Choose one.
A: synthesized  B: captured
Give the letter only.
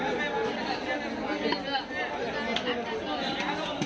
B